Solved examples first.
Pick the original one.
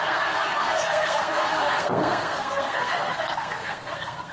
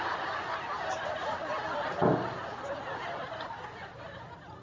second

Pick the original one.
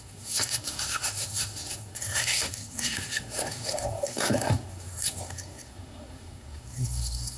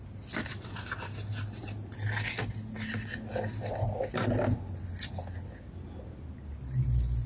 second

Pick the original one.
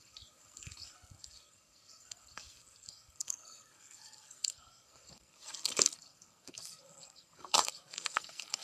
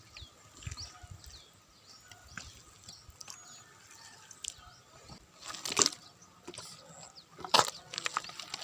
second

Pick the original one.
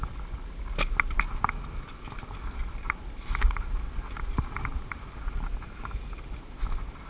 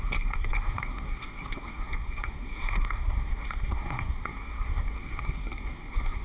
first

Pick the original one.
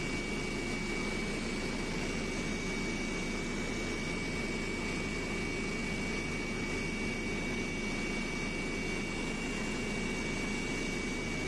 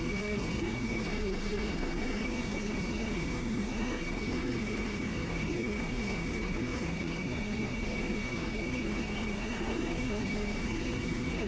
first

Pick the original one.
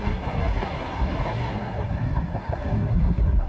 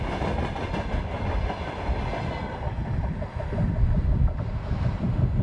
second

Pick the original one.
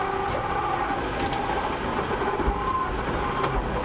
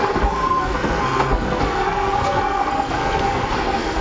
first